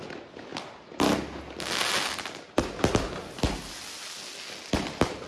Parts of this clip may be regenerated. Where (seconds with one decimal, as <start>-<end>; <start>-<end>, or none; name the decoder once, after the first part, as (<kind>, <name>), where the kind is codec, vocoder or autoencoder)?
none